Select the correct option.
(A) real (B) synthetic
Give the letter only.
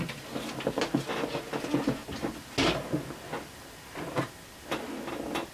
A